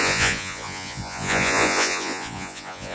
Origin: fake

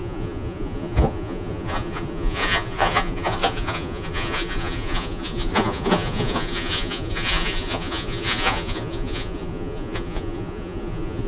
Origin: fake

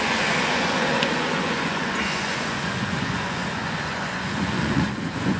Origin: fake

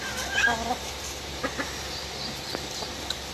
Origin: real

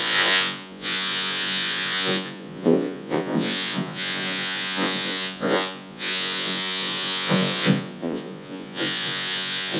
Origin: fake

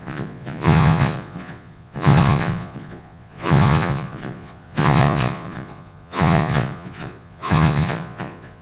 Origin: fake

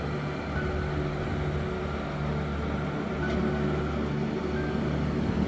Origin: real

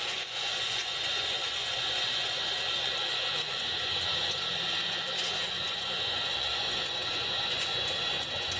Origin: fake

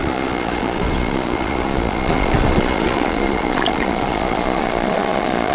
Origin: fake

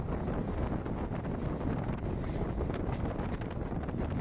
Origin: real